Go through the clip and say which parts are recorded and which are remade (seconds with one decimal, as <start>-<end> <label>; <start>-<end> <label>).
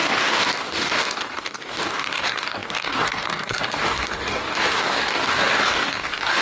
0.0-6.4 remade